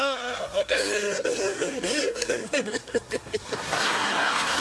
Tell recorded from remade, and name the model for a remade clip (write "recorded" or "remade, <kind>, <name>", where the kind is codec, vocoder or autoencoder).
remade, codec, SNAC